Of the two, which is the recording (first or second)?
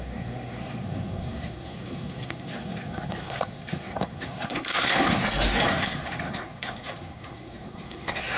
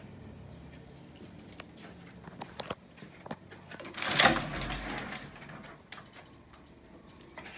second